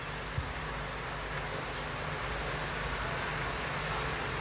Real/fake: real